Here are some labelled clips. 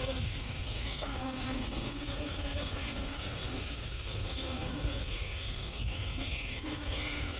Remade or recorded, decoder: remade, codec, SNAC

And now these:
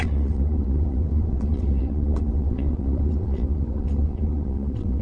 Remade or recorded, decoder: remade, vocoder, WaveNeXt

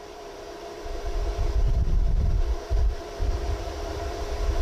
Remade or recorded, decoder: remade, vocoder, BigVGAN v2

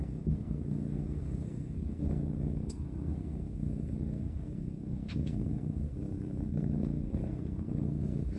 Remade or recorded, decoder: remade, codec, SNAC